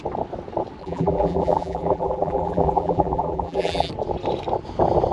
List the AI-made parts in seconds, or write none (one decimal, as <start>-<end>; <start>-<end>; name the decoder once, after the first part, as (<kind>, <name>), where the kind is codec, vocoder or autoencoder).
0.8-3.9 (vocoder, BigVGAN v2)